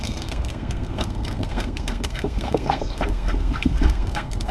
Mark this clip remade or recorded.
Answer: remade